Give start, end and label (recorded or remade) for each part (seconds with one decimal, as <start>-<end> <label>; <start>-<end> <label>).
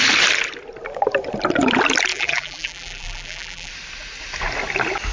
0.0-2.1 recorded; 2.1-3.7 remade; 3.7-5.1 recorded